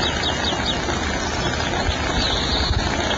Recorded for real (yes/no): yes